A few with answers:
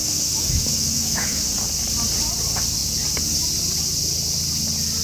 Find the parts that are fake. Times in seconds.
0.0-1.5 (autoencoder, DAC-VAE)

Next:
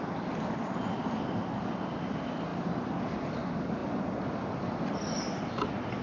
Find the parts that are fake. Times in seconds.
none

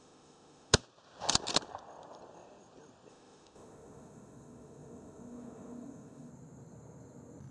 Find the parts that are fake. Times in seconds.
0.0-0.8 (autoencoder, DAC-VAE); 3.1-6.3

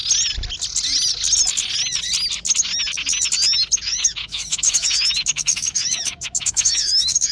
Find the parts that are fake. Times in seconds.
3.8-7.3 (autoencoder, DAC-VAE)

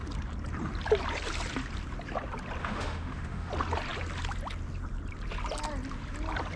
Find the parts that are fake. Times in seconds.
2.6-3.5 (autoencoder, DAC-VAE)

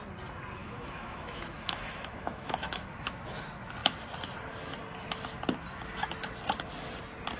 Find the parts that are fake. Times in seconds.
0.6-3.2 (autoencoder, DAC-VAE)